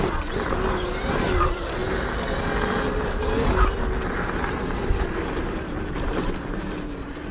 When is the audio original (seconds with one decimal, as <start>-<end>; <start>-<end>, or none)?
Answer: 0.0-7.3